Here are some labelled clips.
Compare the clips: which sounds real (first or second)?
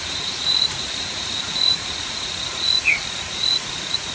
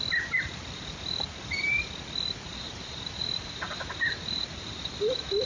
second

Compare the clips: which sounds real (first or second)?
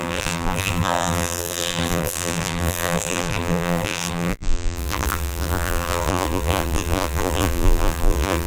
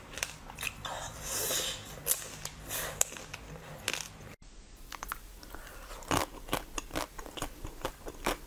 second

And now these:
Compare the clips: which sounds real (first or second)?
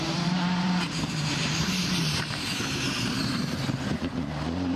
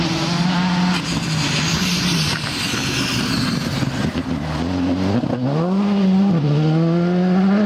second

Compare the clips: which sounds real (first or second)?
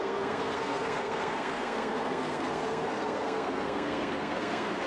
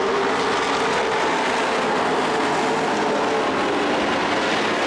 second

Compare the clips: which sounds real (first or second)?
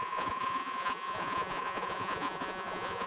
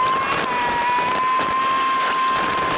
second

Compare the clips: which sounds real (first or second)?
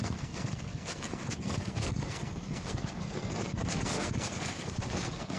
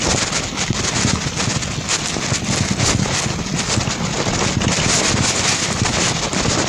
second